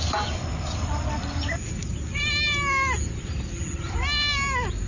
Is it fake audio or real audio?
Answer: real